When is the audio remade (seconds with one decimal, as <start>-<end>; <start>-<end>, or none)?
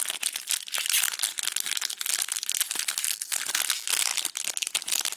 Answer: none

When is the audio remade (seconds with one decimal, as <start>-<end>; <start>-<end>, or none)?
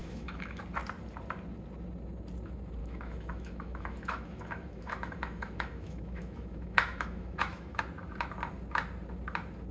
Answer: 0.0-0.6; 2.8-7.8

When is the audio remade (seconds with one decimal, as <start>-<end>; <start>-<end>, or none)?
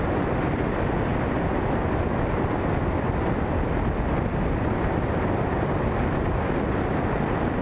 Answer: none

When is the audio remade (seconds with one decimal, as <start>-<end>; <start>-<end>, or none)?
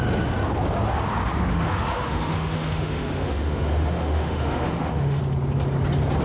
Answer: 1.5-5.2